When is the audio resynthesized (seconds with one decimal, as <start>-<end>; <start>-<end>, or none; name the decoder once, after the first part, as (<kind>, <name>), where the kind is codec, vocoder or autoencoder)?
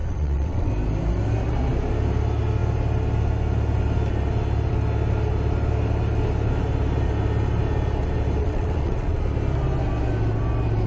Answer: 0.0-0.7 (vocoder, WaveNeXt); 8.4-9.2